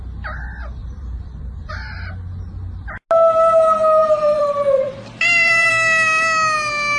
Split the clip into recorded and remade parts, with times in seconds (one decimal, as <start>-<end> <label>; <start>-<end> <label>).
0.0-0.8 recorded; 0.8-1.7 remade; 1.7-4.0 recorded; 4.0-5.7 remade; 5.7-7.0 recorded